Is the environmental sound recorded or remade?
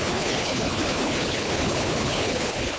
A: remade